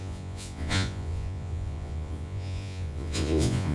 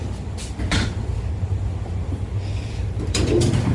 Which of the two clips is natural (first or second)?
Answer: second